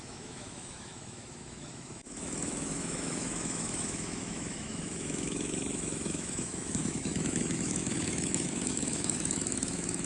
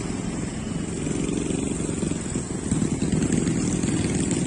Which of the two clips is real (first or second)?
second